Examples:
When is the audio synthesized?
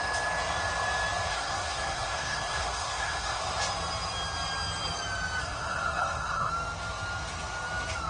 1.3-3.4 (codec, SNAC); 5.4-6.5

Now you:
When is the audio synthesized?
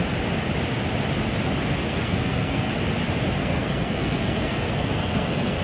1.8-2.7 (codec, SNAC); 3.4-5.6